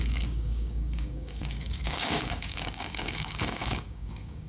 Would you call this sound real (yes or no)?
no